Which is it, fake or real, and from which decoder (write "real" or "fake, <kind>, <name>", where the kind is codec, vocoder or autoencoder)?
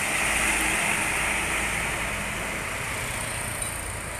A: real